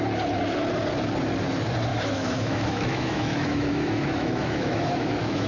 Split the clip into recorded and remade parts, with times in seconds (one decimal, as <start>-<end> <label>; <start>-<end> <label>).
0.0-1.9 recorded; 1.9-5.5 remade